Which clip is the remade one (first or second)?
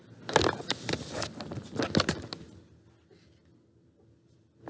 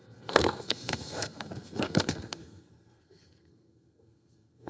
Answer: second